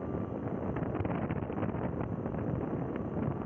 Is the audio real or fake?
fake